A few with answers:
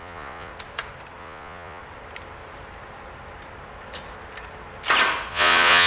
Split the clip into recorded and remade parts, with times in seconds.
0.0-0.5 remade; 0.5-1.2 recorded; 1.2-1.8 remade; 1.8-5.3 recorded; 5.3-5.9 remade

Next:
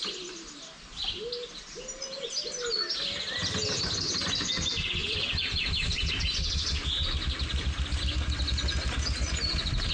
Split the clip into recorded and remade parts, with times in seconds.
0.0-9.9 recorded